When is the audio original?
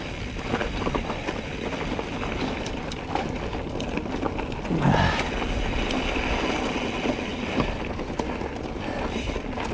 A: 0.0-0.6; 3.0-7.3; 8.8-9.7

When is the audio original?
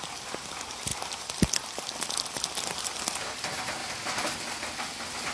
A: 0.0-5.3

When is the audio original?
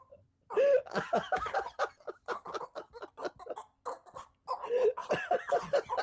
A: 0.0-5.0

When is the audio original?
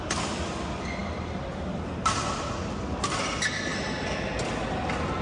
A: 0.0-5.2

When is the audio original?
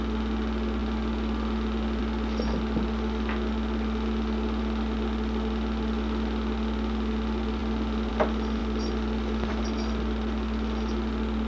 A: 0.0-11.5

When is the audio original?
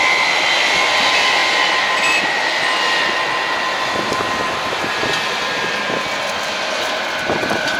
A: 0.0-7.8